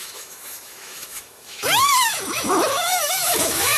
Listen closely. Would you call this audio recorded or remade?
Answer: remade